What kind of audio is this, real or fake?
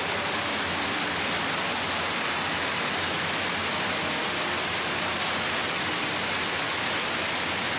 real